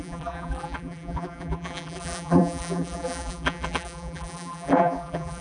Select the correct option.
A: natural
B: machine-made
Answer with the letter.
B